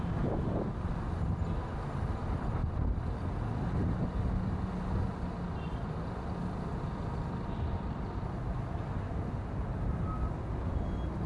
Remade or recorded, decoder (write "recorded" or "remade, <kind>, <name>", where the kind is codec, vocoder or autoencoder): recorded